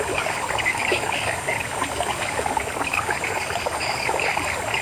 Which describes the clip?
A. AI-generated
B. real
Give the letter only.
A